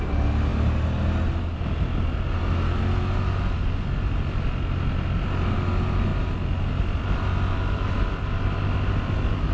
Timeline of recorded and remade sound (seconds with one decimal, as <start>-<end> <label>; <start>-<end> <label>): 0.0-9.5 recorded